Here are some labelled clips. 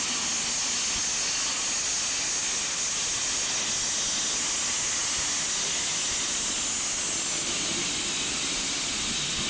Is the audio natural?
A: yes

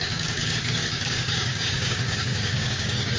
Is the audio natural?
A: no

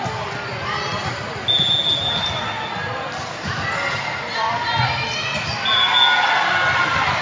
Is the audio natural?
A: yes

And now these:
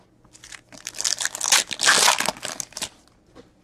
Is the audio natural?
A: yes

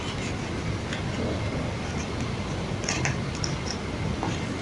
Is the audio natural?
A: yes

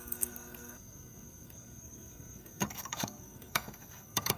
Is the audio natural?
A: no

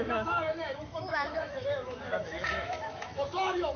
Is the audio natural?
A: no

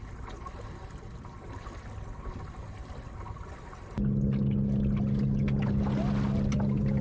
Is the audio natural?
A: yes